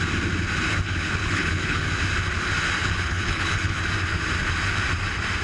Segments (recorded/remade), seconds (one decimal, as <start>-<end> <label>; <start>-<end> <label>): 0.0-0.7 recorded; 0.7-1.9 remade; 1.9-2.8 recorded; 2.8-3.8 remade; 3.8-5.4 recorded